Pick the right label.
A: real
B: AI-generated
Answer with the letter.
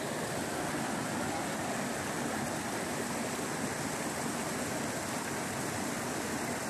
A